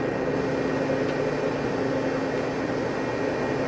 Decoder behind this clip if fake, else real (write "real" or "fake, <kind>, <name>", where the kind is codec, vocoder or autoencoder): real